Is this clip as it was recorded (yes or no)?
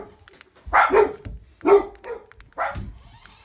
yes